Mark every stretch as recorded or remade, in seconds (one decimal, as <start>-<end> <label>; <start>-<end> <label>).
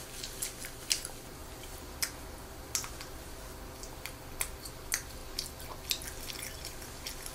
0.0-7.3 recorded